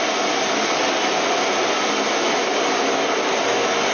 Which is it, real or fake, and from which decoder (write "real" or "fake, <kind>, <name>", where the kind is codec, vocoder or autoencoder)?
real